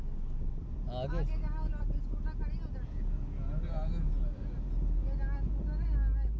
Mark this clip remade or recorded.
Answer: recorded